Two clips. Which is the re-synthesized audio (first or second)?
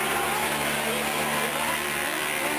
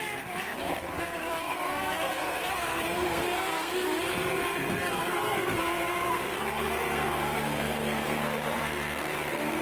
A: second